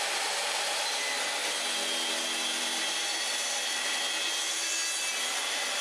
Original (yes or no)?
yes